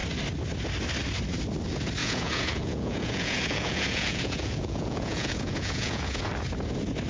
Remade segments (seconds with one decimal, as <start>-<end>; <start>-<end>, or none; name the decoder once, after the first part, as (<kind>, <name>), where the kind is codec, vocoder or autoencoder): 2.0-6.3 (vocoder, Vocos)